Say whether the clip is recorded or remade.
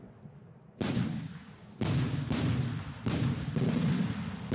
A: recorded